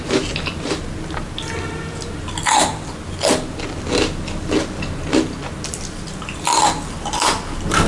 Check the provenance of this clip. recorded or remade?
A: recorded